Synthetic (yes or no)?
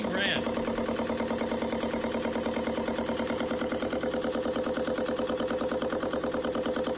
no